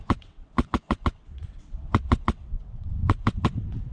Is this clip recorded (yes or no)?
no